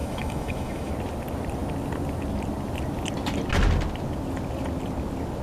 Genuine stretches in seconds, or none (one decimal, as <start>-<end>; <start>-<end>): 0.9-5.4